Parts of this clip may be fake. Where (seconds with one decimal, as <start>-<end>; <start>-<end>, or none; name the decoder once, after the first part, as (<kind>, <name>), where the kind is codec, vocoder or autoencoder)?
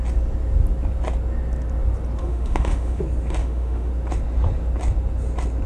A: 2.2-3.0 (autoencoder, DAC-VAE); 3.4-3.9